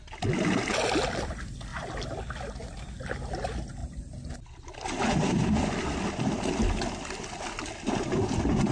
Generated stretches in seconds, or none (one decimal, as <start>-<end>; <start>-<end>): none